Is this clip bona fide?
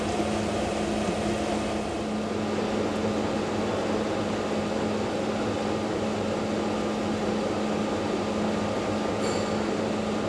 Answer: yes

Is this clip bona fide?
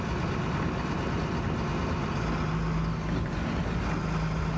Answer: yes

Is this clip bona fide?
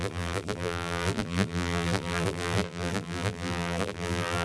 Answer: no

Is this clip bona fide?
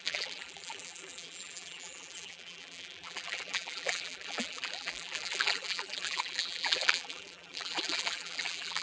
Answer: no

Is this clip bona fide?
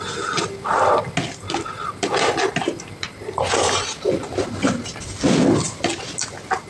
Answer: yes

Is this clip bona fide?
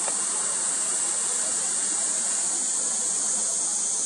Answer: yes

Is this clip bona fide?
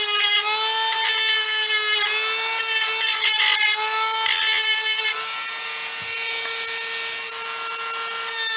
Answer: yes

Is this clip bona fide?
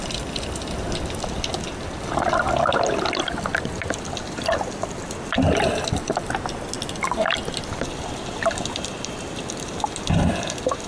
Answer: yes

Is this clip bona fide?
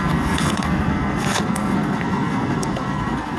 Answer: no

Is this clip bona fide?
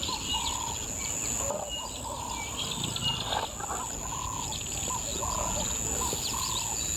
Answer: yes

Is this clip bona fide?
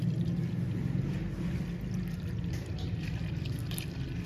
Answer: yes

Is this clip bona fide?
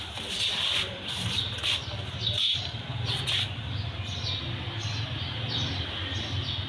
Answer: yes